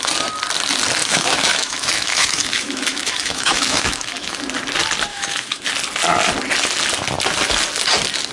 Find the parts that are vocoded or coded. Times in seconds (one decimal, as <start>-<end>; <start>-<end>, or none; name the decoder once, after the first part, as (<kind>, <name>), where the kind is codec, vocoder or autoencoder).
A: 1.0-4.4 (autoencoder, DAC-VAE); 5.1-5.7